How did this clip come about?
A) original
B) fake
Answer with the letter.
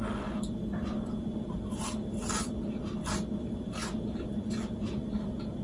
A